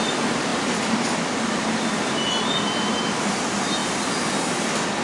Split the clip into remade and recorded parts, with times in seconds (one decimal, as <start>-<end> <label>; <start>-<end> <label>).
0.0-5.0 recorded